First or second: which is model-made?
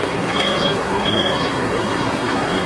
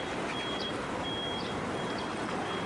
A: first